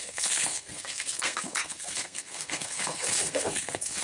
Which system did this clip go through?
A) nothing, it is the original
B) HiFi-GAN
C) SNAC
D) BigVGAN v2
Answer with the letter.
C